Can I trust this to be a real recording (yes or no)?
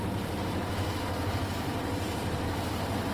no